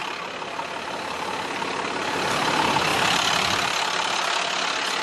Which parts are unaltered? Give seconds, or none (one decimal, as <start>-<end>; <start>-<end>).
0.0-2.9; 4.1-5.0